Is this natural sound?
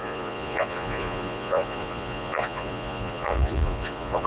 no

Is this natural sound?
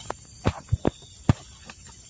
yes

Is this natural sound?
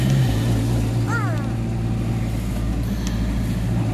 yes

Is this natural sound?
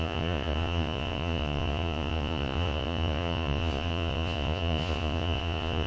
no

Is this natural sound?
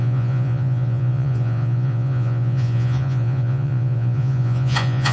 no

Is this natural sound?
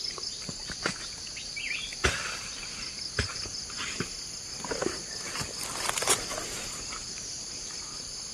yes